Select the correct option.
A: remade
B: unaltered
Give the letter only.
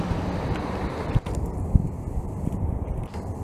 A